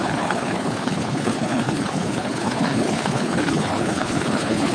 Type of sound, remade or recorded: remade